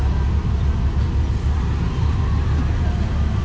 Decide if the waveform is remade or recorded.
recorded